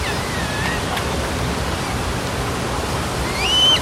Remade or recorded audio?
recorded